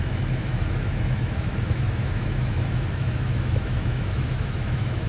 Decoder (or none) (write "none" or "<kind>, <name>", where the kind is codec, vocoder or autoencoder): autoencoder, DAC-VAE